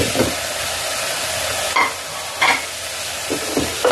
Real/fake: real